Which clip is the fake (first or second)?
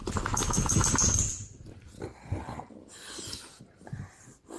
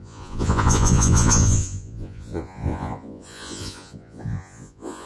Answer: second